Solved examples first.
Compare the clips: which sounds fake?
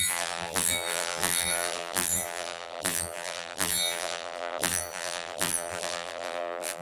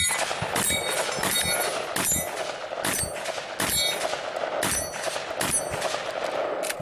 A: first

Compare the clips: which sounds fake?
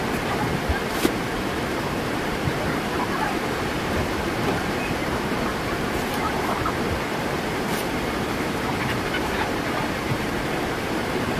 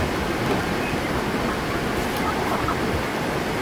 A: first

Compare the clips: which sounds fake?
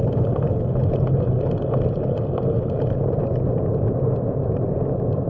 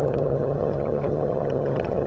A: second